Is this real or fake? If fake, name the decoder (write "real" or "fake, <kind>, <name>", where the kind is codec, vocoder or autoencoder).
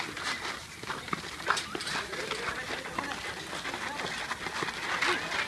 real